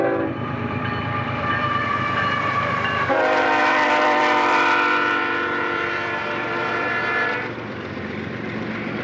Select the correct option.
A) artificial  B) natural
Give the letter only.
A